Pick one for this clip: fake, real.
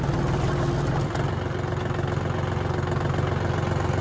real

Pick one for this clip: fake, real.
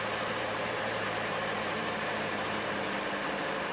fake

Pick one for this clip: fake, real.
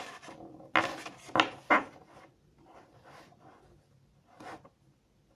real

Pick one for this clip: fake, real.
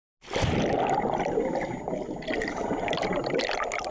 real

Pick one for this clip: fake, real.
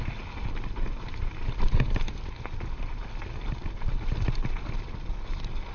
real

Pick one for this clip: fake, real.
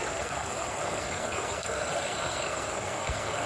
fake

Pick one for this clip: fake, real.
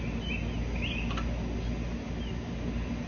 real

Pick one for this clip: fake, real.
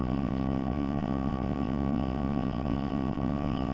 fake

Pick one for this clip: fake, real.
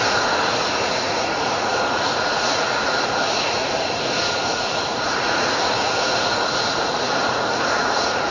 fake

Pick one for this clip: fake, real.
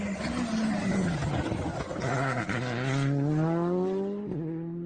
real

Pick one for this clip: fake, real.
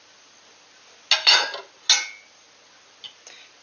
real